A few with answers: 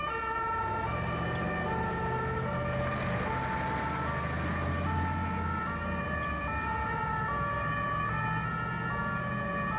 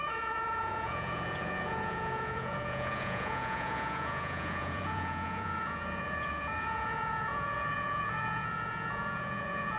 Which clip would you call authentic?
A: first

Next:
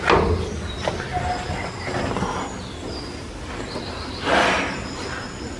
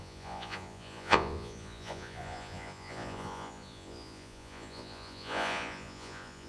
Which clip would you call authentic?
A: first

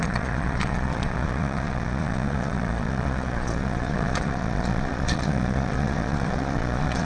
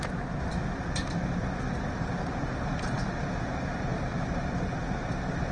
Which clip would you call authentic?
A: second